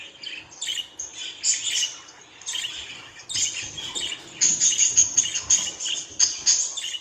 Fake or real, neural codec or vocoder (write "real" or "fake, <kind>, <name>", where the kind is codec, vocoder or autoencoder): fake, vocoder, BigVGAN v2